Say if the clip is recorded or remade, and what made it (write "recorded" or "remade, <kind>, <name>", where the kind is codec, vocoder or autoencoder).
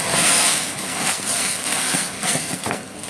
remade, codec, SNAC